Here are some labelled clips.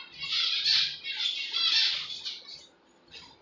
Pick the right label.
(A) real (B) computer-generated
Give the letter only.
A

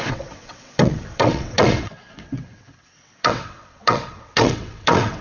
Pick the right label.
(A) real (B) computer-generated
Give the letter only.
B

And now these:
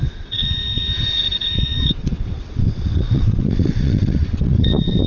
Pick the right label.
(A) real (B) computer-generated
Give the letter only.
B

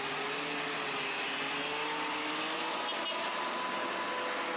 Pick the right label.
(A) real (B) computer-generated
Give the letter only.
A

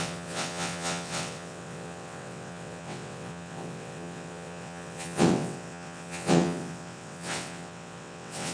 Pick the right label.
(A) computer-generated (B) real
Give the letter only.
A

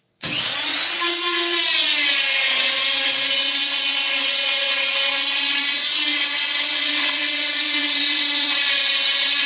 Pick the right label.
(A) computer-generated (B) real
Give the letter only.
A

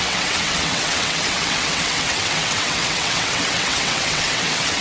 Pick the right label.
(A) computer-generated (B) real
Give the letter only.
A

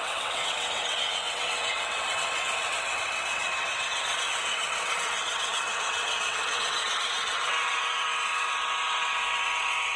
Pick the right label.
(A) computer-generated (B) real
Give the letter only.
A